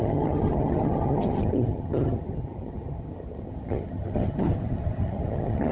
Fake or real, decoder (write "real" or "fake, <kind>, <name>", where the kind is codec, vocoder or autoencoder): fake, vocoder, HiFi-GAN